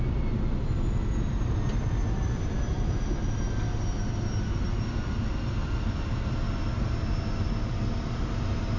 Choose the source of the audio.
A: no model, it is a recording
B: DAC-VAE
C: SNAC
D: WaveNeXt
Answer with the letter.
A